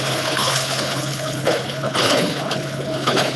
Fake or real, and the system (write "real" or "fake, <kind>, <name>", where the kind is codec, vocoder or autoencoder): fake, codec, HILCodec